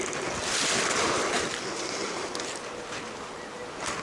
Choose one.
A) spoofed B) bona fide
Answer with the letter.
B